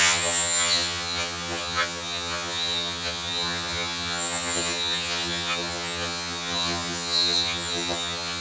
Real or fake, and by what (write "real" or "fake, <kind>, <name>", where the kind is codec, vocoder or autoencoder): fake, vocoder, HiFi-GAN